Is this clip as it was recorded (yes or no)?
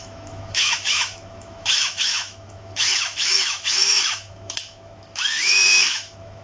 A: no